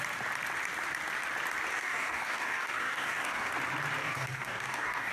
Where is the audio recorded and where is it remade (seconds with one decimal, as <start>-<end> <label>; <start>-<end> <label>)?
0.0-1.7 recorded; 1.7-3.5 remade; 3.5-4.0 recorded; 4.0-5.1 remade